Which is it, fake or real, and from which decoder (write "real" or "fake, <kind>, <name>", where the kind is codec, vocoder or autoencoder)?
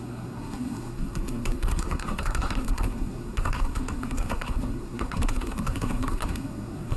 fake, codec, SNAC